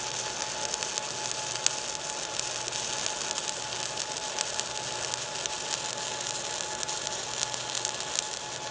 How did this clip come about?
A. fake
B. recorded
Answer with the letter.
B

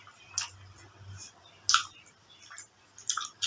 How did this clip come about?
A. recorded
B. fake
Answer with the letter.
A